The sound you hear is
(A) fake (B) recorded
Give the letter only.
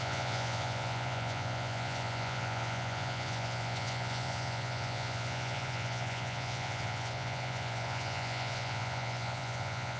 A